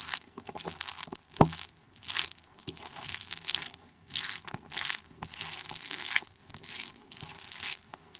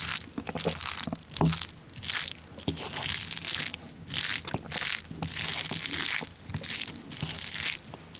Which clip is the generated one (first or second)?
first